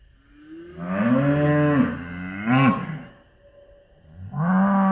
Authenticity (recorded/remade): recorded